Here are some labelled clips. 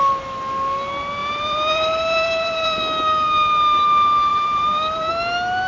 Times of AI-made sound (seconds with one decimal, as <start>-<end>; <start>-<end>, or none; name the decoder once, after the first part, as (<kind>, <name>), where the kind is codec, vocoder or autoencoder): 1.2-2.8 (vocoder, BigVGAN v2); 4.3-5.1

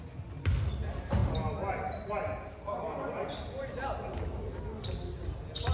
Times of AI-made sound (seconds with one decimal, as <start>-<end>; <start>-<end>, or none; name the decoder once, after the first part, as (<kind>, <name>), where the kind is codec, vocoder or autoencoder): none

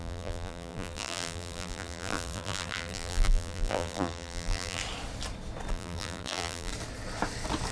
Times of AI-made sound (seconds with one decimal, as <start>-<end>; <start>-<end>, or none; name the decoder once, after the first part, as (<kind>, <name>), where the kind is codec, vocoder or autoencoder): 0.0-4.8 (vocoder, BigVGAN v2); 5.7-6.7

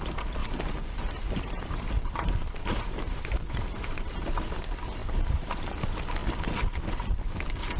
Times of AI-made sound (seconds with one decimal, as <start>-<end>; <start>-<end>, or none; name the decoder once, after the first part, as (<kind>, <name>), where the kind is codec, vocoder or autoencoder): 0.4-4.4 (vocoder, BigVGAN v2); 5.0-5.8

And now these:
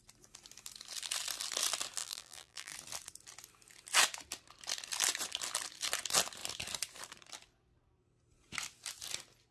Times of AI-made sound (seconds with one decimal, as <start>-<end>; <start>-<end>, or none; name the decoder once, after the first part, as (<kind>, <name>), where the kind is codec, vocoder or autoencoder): 2.0-2.7 (vocoder, BigVGAN v2)

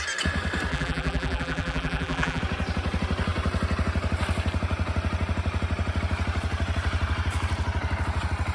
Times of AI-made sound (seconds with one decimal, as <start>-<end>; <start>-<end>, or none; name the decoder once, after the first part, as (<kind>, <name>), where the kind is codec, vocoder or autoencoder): 0.7-2.4 (vocoder, BigVGAN v2)